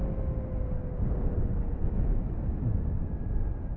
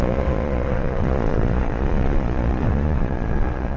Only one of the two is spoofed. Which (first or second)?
second